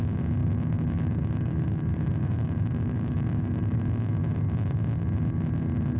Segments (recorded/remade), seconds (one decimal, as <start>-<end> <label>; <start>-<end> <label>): 0.0-0.4 recorded; 0.4-3.8 remade; 3.8-6.0 recorded